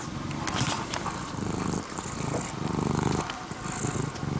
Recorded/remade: recorded